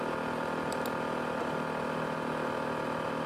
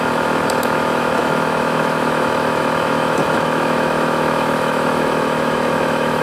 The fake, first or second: second